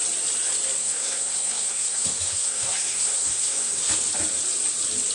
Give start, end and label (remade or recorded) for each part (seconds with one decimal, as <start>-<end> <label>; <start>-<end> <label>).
0.0-0.8 recorded; 0.8-3.9 remade; 3.9-5.1 recorded